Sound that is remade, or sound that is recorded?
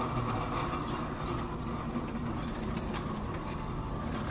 recorded